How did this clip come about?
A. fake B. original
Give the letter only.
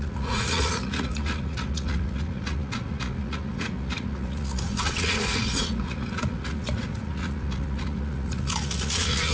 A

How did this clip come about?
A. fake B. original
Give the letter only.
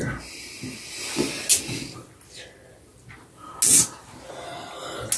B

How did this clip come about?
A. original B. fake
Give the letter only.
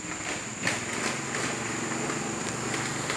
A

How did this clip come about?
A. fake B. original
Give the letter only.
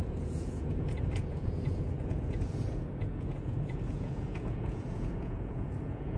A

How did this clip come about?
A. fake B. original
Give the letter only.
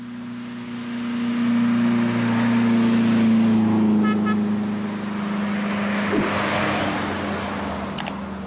B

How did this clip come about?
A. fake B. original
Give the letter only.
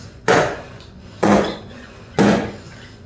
A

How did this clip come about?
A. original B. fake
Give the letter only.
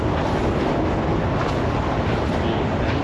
A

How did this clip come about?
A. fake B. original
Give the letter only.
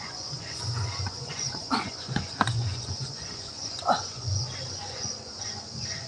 A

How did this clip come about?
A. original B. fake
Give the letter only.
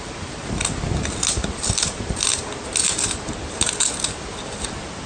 A